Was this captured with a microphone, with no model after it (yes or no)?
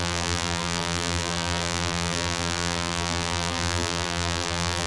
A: no